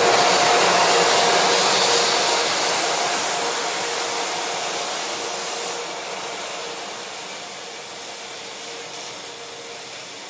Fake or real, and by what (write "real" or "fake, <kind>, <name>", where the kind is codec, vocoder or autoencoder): real